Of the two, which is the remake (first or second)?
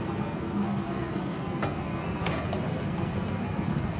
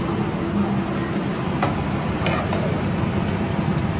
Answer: first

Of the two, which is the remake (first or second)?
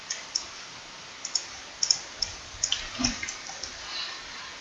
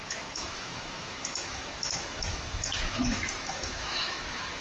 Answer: second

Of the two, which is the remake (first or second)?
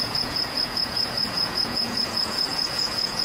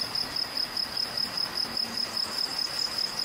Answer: first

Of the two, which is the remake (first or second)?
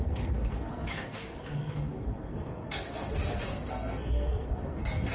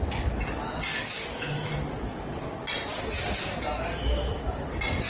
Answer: first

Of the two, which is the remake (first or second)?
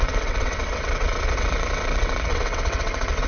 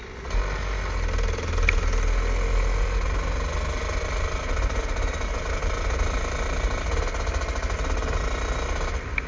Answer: first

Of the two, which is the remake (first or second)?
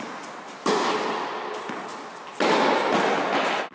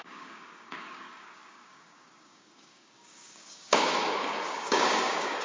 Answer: second